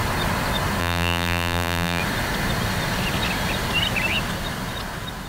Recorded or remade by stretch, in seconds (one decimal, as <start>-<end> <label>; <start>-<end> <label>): 0.0-0.8 recorded; 0.8-2.0 remade; 2.0-5.3 recorded